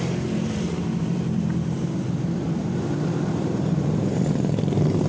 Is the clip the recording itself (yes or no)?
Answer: no